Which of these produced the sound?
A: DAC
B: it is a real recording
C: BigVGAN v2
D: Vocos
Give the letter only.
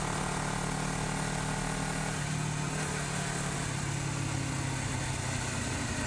B